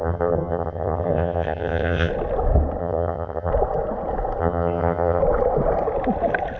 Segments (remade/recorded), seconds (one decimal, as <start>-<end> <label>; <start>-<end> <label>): 0.0-2.1 remade; 2.1-2.8 recorded; 2.8-3.5 remade; 3.5-4.4 recorded; 4.4-5.2 remade; 5.2-6.6 recorded